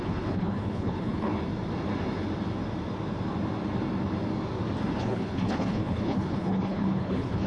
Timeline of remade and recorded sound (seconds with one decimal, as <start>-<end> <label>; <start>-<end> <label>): 0.0-1.3 remade; 1.3-5.0 recorded; 5.0-7.5 remade